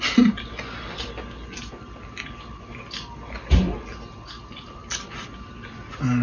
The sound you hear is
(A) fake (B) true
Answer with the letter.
B